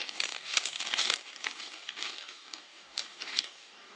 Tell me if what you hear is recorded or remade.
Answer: remade